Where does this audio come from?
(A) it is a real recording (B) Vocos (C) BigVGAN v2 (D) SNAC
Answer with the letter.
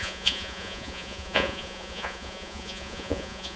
B